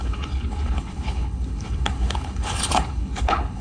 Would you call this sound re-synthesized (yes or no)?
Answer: yes